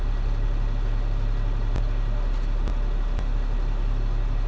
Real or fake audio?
real